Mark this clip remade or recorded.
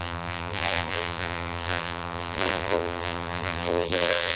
remade